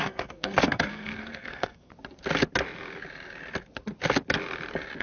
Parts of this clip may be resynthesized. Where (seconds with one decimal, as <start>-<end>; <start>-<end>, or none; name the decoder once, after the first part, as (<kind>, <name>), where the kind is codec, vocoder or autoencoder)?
0.0-1.9 (codec, SNAC)